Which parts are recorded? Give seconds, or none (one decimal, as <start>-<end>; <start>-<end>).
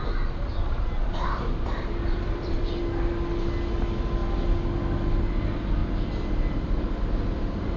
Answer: 0.0-0.5; 2.8-7.8